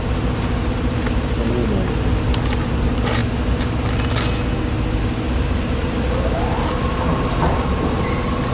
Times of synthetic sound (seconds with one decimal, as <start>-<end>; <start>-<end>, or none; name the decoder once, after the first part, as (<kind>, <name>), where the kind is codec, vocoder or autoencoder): none

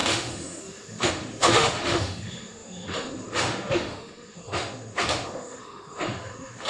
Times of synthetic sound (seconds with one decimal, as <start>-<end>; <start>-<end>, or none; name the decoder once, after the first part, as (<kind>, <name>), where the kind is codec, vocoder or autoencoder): 0.0-6.7 (autoencoder, DAC-VAE)

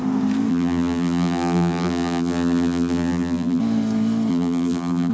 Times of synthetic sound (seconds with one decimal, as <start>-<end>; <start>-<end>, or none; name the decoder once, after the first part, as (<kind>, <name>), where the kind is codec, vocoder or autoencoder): 0.5-3.6 (vocoder, BigVGAN v2); 4.3-5.1

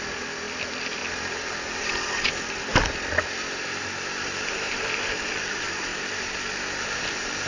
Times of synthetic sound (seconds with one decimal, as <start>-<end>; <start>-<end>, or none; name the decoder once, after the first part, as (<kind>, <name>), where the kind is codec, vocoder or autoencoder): 0.0-5.9 (vocoder, BigVGAN v2); 6.8-7.5

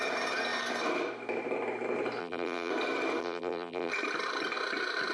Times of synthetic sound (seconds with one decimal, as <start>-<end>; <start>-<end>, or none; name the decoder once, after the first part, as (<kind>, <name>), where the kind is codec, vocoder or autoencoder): 2.2-2.7 (vocoder, BigVGAN v2); 3.2-3.9